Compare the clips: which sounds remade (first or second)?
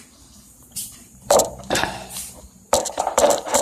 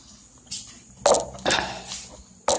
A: first